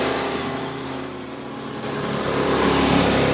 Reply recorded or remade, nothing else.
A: remade